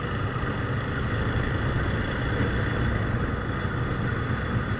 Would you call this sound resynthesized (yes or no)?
no